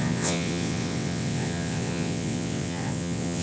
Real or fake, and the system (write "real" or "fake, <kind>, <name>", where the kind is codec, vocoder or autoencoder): fake, vocoder, WaveNeXt